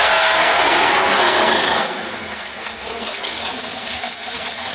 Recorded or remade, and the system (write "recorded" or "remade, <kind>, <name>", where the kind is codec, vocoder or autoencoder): remade, codec, SNAC